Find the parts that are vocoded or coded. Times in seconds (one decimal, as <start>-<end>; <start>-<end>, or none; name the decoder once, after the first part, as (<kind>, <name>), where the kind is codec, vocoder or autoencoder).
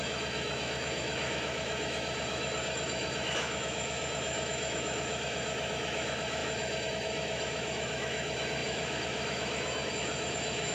0.0-10.7 (autoencoder, DAC-VAE)